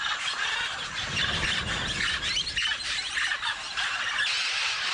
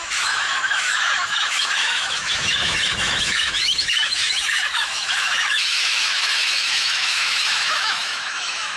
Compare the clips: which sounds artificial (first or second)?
second